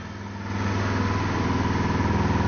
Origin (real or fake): real